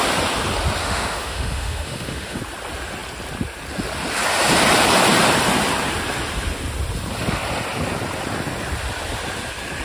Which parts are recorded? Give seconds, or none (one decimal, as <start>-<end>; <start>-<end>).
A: 0.0-0.8; 2.4-9.8